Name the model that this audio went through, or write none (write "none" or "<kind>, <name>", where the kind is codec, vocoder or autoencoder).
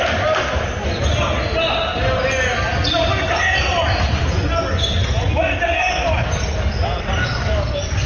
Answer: none